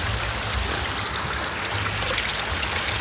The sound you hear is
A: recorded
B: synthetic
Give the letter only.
A